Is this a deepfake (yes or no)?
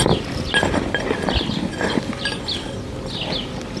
no